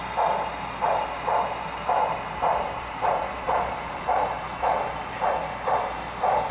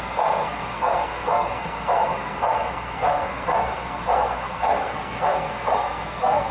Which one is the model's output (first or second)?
second